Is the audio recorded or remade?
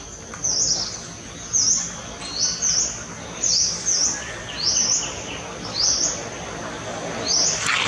recorded